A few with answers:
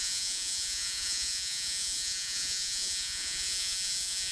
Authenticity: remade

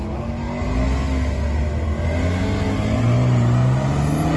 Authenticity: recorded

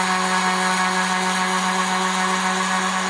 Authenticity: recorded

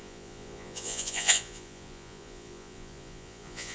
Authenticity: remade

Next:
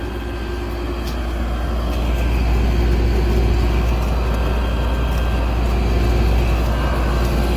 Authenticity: recorded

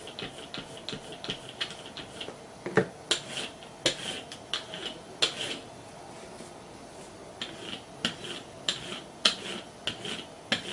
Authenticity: recorded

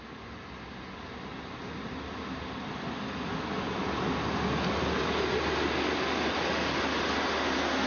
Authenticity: recorded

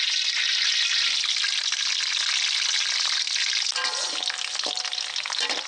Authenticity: recorded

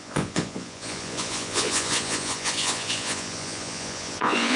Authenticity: remade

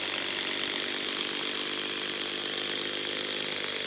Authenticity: recorded